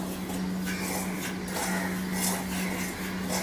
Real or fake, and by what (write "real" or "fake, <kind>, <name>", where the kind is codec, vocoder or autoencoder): real